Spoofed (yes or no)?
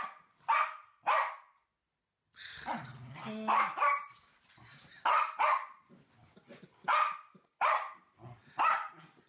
no